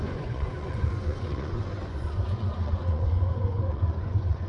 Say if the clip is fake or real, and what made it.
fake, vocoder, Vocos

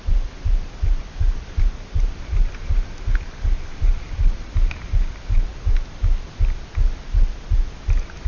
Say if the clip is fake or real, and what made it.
real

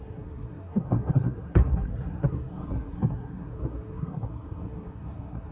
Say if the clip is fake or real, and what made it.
fake, codec, SNAC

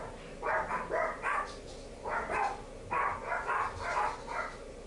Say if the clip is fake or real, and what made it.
real